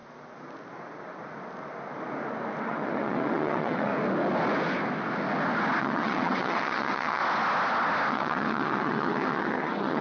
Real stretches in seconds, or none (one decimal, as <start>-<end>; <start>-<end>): 0.0-2.6; 3.9-5.8; 7.2-8.1